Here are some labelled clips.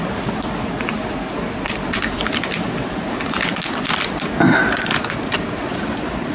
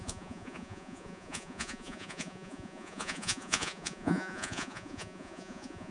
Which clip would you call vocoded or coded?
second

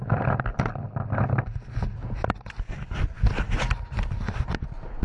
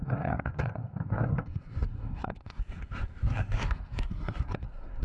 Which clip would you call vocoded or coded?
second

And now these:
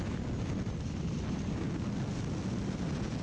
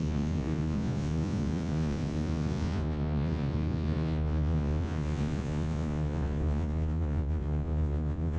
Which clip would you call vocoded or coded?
second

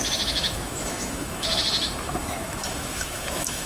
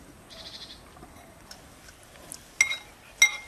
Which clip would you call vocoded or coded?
first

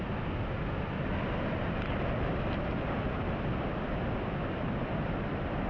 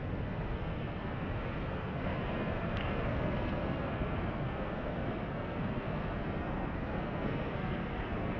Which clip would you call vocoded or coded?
second